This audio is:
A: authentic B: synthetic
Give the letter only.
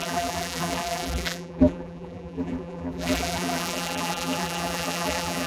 B